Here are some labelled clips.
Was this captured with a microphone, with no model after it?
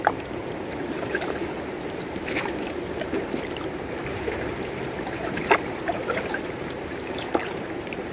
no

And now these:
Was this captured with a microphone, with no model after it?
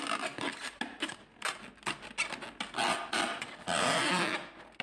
yes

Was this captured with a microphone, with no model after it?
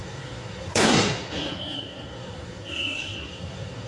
no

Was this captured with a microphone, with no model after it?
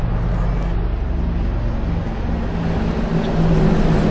yes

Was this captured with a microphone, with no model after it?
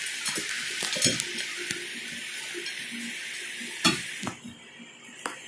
yes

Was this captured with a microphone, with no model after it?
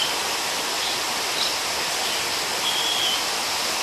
yes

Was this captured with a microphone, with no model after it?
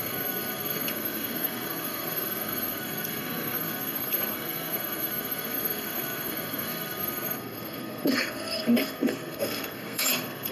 no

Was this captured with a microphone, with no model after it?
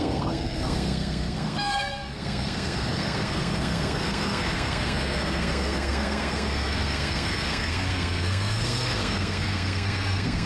no